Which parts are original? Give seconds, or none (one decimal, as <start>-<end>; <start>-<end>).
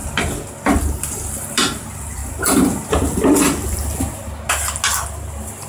0.0-0.9; 2.2-5.7